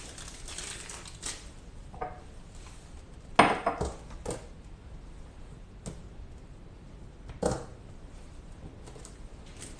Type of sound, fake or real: real